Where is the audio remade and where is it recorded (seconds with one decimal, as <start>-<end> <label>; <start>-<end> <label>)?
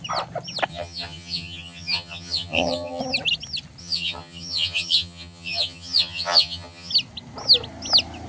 0.0-0.7 recorded; 0.7-3.0 remade; 3.0-3.8 recorded; 3.8-6.9 remade; 6.9-8.3 recorded